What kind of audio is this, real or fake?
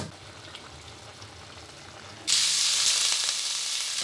real